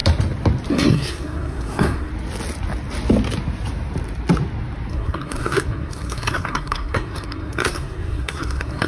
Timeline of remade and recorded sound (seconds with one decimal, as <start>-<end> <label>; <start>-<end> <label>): 0.0-0.7 recorded; 0.7-2.1 remade; 2.1-4.9 recorded; 4.9-8.9 remade